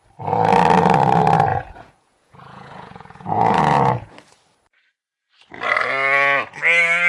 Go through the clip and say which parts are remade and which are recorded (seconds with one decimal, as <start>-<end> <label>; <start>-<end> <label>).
0.0-1.5 recorded; 1.5-4.1 remade; 4.1-7.1 recorded